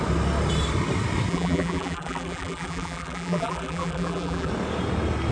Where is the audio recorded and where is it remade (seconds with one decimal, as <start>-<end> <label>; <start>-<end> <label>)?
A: 0.0-1.3 recorded; 1.3-4.5 remade; 4.5-5.3 recorded